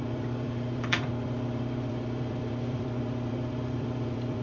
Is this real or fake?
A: fake